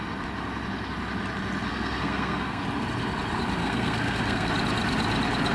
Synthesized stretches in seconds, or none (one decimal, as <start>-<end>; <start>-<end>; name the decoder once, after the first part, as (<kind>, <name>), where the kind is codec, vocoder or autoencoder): 1.7-2.6 (codec, SNAC); 3.6-4.5